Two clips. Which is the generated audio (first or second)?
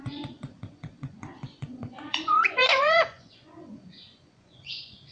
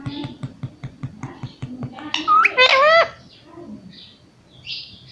first